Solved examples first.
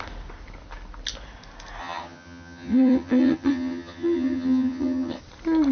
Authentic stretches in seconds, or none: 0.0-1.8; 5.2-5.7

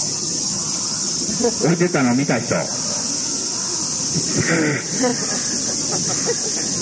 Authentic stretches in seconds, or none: 1.3-6.8

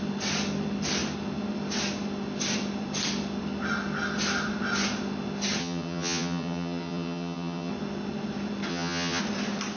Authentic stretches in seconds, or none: 0.0-5.6; 7.7-8.7; 9.2-9.8

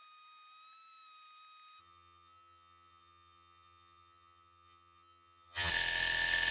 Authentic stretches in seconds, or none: 0.0-1.8; 5.7-6.5